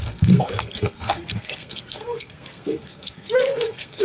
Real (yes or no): no